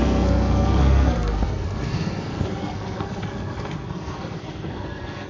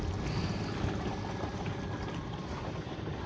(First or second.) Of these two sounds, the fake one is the first